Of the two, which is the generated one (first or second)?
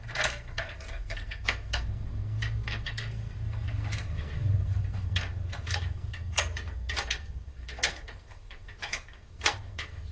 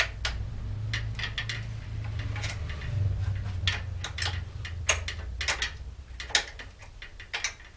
first